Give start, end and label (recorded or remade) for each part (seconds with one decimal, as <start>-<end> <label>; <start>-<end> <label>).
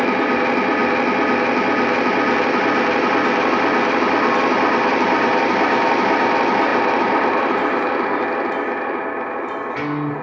0.0-4.9 recorded; 4.9-5.5 remade; 5.5-6.7 recorded; 6.7-8.2 remade; 8.2-10.2 recorded